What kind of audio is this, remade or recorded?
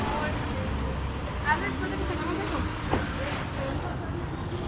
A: recorded